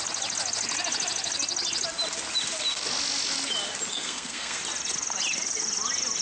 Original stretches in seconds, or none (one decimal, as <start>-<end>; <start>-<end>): 0.0-3.9; 4.6-6.2